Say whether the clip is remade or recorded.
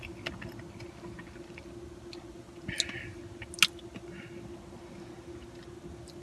recorded